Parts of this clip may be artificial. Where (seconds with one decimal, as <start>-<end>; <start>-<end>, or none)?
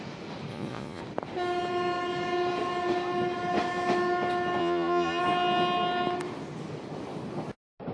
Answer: 0.5-1.0; 4.6-5.2